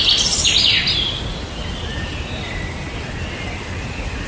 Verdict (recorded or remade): recorded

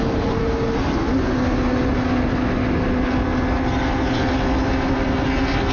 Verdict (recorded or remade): recorded